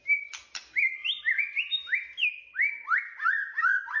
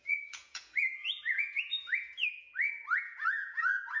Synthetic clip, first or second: second